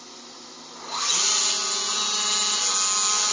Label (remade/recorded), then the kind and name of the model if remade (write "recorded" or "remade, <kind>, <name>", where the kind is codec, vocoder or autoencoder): recorded